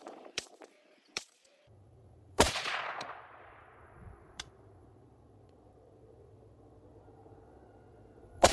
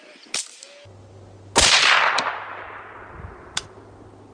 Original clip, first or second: second